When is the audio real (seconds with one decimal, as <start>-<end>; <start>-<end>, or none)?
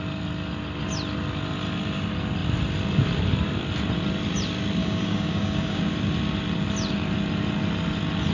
0.0-4.8; 5.8-8.3